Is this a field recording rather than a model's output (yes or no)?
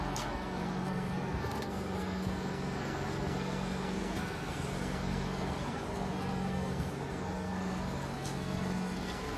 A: no